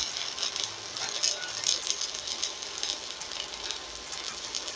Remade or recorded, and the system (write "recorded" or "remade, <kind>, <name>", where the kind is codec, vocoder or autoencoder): recorded